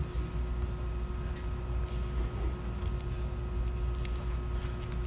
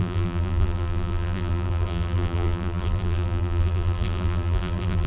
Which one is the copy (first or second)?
second